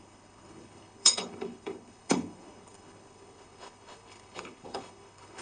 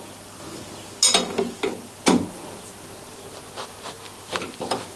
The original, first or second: second